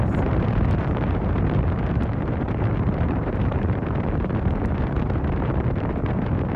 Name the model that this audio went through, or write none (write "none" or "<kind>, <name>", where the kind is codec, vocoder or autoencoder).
vocoder, BigVGAN v2